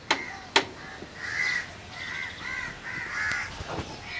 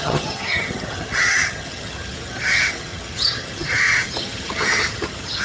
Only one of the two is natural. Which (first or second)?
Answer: first